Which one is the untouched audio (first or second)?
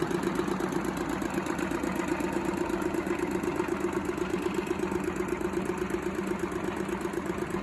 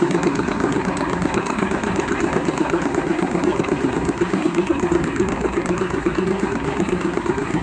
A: first